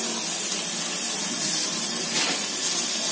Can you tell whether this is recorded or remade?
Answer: recorded